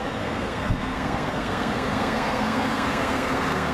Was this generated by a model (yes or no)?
yes